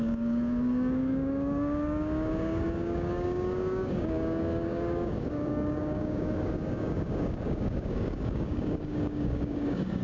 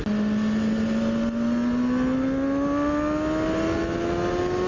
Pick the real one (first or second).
second